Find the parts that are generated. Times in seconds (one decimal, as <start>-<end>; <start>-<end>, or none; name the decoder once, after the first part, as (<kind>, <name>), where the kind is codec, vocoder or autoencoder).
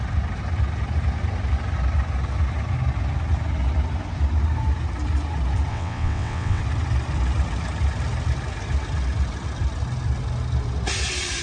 5.7-6.6 (vocoder, WaveNeXt)